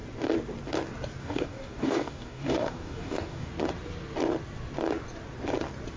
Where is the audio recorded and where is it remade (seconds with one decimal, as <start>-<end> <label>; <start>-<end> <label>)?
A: 0.0-1.2 recorded; 1.2-3.5 remade; 3.5-6.0 recorded